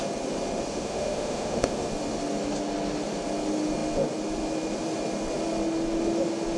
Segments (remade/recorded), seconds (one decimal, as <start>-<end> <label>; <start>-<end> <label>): 0.0-0.7 recorded; 0.7-1.9 remade; 1.9-6.6 recorded